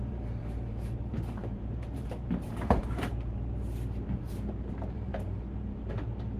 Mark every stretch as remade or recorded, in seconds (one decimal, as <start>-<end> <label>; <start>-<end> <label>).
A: 0.0-6.4 remade